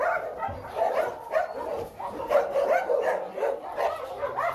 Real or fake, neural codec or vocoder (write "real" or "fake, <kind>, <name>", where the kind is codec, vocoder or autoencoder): real